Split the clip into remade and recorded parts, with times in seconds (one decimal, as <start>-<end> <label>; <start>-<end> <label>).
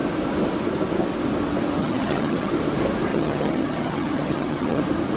0.0-1.8 recorded; 1.8-2.5 remade; 2.5-3.1 recorded; 3.1-4.8 remade; 4.8-5.2 recorded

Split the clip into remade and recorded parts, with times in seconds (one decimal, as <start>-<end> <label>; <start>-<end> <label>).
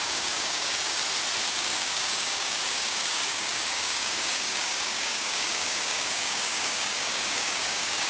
0.0-1.0 remade; 1.0-1.5 recorded; 1.5-8.1 remade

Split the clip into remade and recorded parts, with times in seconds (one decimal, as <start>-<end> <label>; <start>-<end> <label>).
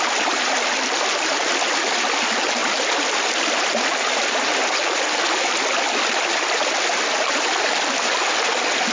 0.0-8.9 recorded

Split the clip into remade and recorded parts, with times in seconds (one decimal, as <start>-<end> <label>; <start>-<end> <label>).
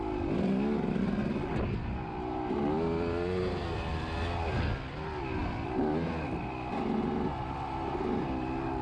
0.0-8.8 recorded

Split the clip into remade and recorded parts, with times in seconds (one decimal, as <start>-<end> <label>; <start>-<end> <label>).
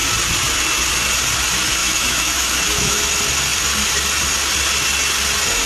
0.0-1.8 recorded; 1.8-3.0 remade; 3.0-5.7 recorded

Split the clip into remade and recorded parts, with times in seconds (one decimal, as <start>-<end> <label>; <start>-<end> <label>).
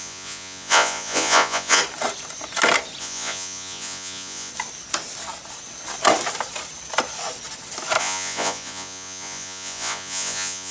0.0-1.8 remade; 1.8-3.0 recorded; 3.0-4.5 remade; 4.5-8.0 recorded; 8.0-10.7 remade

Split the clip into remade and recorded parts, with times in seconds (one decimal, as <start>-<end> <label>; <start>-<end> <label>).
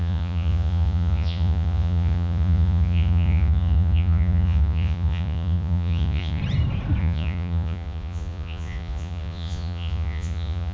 0.0-6.4 remade; 6.4-7.0 recorded; 7.0-10.7 remade